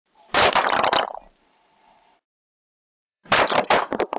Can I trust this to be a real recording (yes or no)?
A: no